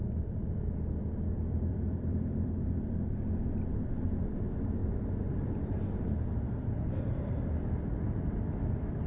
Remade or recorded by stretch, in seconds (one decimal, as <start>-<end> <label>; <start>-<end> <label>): 0.0-4.8 remade; 4.8-5.3 recorded; 5.3-9.1 remade